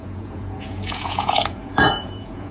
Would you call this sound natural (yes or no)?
no